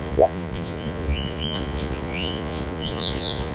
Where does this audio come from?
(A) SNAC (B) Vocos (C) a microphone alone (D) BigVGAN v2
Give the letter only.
B